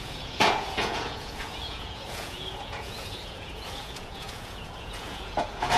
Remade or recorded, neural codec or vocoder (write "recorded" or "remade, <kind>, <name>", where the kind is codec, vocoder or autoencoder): remade, vocoder, Vocos